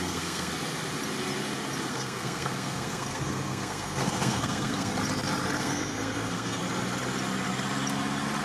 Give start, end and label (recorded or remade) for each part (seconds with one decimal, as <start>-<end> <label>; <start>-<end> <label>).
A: 0.0-0.5 remade; 0.5-1.9 recorded; 1.9-4.9 remade; 4.9-5.6 recorded; 5.6-6.6 remade; 6.6-8.4 recorded